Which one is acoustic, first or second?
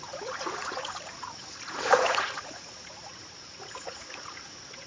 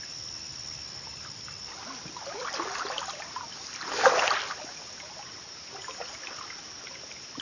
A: second